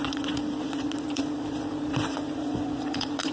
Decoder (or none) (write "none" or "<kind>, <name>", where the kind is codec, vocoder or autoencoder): vocoder, Vocos